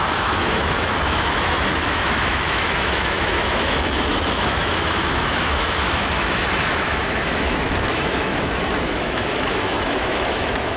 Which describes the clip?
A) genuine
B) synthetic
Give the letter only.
B